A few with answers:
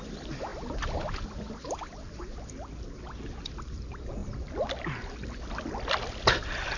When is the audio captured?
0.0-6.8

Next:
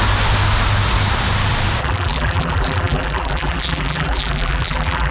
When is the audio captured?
0.0-1.8

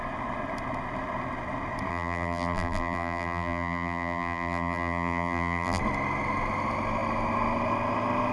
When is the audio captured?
0.0-1.9; 5.8-8.3

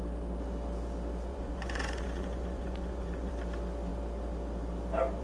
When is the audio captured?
0.0-1.3; 3.3-5.2

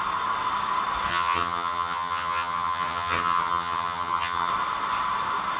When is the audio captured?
0.0-1.1; 4.5-5.6